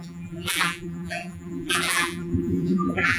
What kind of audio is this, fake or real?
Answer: fake